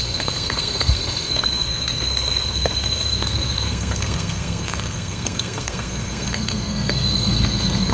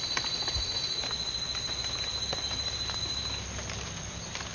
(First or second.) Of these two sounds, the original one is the second